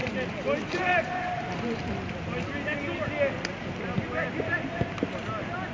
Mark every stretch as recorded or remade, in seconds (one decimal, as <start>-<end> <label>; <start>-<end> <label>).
0.0-1.9 remade; 1.9-5.7 recorded